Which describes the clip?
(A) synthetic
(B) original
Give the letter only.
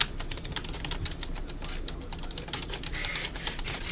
B